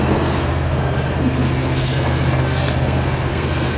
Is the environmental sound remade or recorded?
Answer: remade